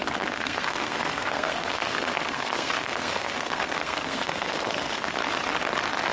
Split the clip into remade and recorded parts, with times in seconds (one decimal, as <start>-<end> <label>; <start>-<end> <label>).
0.0-5.2 remade; 5.2-6.1 recorded